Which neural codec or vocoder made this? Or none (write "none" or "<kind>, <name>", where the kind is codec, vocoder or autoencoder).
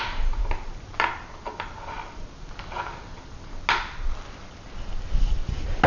none